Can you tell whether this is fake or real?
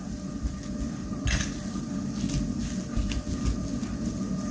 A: real